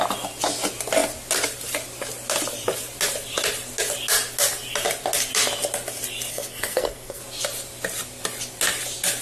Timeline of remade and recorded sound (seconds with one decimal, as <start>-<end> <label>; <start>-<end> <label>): 0.0-6.3 recorded; 6.3-7.2 remade; 7.2-9.2 recorded

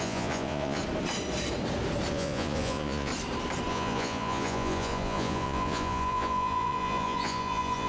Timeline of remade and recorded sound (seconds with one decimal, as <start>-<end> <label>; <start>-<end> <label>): 0.0-0.8 remade; 0.8-2.1 recorded; 2.1-3.1 remade; 3.1-3.7 recorded; 3.7-7.9 remade

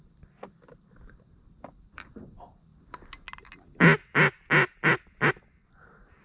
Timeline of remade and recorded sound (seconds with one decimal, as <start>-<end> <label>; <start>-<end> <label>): 0.0-2.7 remade; 2.7-4.8 recorded; 4.8-6.2 remade

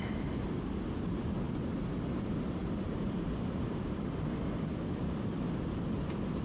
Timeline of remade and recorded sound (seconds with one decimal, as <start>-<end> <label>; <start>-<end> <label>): 0.0-2.6 recorded; 2.6-4.2 remade; 4.2-6.4 recorded

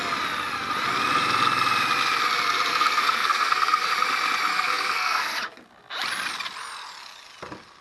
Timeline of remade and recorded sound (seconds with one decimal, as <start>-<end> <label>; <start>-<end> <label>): 0.0-2.7 recorded; 2.7-3.9 remade; 3.9-4.5 recorded; 4.5-5.4 remade; 5.4-7.8 recorded